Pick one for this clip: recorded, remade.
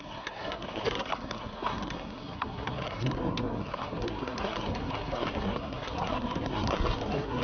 remade